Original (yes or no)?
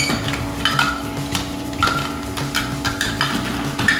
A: yes